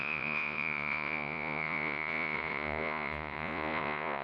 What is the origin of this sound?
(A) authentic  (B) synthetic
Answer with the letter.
B